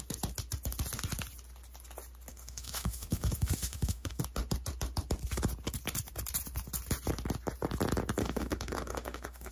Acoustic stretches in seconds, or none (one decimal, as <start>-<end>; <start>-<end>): 0.0-2.3; 4.2-8.2